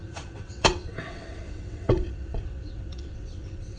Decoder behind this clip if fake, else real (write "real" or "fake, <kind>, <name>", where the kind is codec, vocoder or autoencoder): fake, vocoder, WaveNeXt